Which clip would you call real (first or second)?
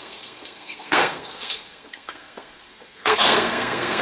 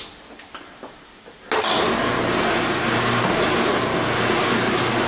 second